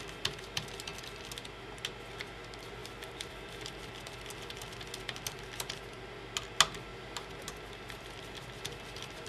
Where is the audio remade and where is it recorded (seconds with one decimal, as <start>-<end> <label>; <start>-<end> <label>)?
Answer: 0.0-9.3 recorded